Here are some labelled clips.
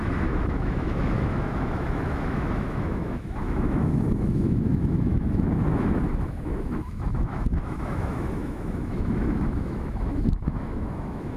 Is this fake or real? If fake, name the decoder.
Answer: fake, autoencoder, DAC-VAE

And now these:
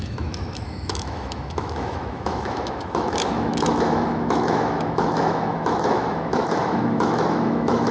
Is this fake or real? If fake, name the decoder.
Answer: fake, autoencoder, DAC-VAE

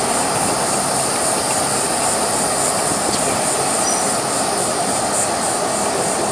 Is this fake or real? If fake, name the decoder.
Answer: real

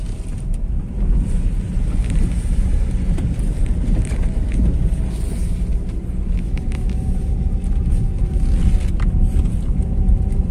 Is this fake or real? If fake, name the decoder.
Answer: real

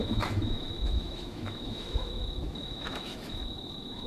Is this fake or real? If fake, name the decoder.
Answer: fake, autoencoder, DAC-VAE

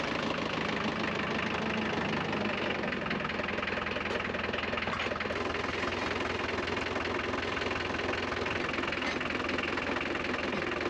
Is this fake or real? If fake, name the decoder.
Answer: real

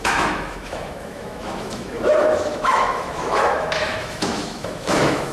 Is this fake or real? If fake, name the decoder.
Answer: fake, autoencoder, DAC-VAE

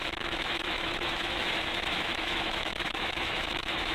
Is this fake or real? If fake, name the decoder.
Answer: fake, autoencoder, DAC-VAE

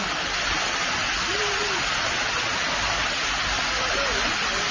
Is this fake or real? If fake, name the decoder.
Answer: real